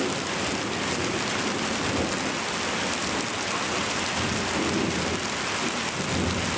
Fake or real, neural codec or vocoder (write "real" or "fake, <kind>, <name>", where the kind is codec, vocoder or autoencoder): real